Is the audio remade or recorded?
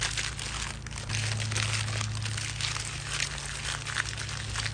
recorded